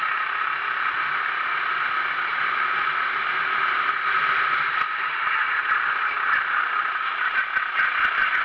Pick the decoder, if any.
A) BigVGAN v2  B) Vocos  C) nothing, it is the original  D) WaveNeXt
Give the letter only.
C